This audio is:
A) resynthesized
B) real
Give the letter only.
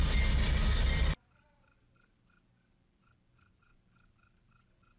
B